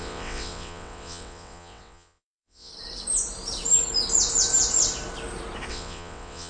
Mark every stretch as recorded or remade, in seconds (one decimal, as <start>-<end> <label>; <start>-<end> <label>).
0.0-2.7 remade; 2.7-5.7 recorded; 5.7-6.5 remade